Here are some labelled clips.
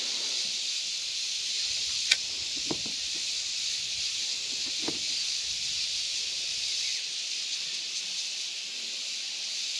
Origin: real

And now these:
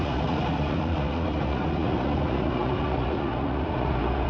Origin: fake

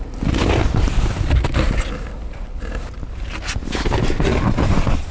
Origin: real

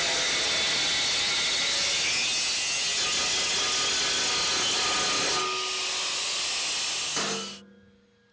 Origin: real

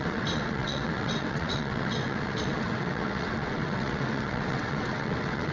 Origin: fake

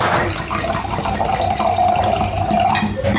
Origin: real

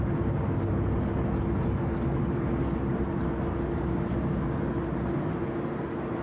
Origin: real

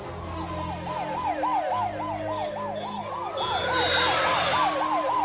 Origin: real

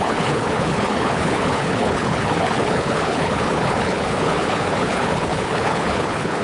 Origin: fake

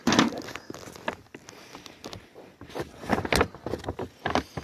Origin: real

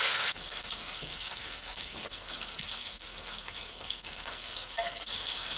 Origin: fake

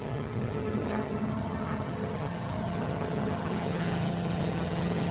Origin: fake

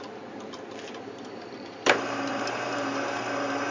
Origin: fake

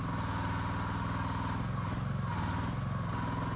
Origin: real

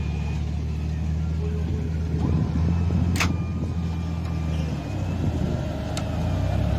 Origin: real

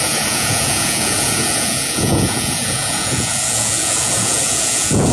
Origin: fake